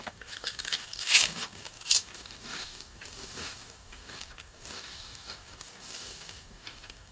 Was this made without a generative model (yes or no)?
no